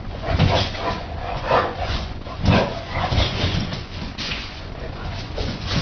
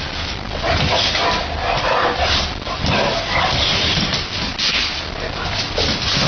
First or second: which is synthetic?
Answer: first